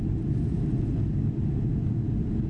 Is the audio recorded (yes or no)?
yes